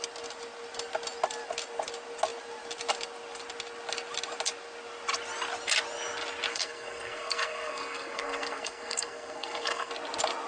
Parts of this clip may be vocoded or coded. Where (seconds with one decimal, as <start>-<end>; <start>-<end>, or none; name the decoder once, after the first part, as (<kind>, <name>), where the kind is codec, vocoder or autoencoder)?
6.5-9.9 (codec, SNAC)